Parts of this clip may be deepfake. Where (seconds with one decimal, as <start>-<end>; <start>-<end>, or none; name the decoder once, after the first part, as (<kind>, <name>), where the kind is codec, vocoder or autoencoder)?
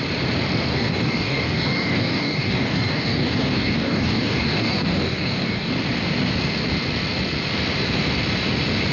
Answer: 0.7-5.7 (codec, DAC)